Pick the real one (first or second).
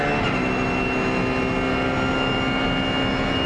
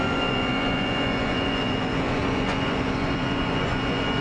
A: first